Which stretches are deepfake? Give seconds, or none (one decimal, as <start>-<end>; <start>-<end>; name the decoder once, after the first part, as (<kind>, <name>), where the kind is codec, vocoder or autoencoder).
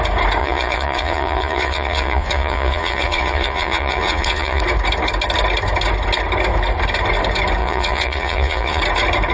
0.4-4.6 (vocoder, Vocos); 7.6-8.8